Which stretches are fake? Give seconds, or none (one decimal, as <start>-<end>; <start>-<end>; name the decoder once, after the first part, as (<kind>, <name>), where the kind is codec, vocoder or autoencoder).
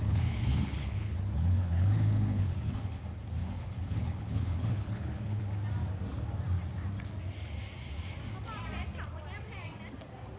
0.0-3.0 (codec, HILCodec); 3.4-5.4